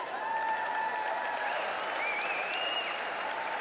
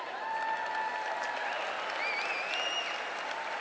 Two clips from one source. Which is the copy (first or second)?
first